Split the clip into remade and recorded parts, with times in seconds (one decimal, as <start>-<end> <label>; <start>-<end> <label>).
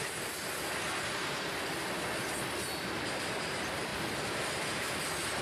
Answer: 0.0-0.4 remade; 0.4-2.8 recorded; 2.8-3.9 remade; 3.9-5.4 recorded